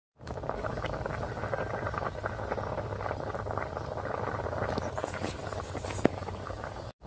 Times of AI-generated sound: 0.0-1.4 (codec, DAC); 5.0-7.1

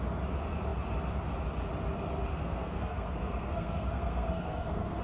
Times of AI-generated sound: 2.3-5.0 (codec, SNAC)

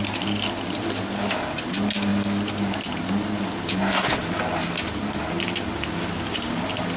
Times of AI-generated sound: none

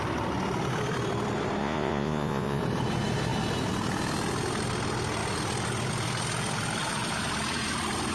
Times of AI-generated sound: 1.6-2.6 (vocoder, Vocos)